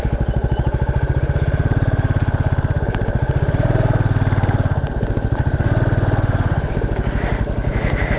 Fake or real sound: real